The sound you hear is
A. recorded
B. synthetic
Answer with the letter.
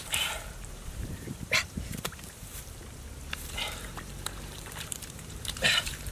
B